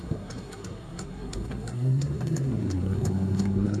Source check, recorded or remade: remade